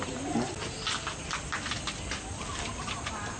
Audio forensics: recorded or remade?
recorded